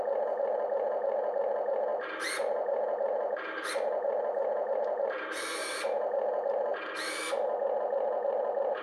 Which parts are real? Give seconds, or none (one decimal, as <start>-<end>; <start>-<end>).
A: 6.7-7.8